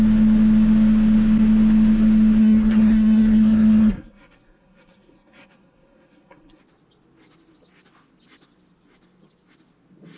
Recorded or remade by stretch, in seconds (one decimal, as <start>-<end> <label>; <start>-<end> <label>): 0.0-2.4 recorded; 2.4-6.6 remade; 6.6-10.2 recorded